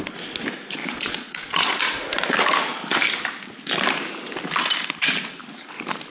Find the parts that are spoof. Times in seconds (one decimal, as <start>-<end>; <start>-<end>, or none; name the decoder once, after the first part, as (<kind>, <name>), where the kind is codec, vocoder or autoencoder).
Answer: 0.8-1.8 (vocoder, Vocos)